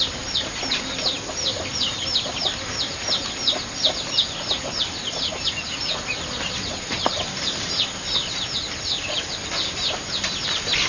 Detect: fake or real real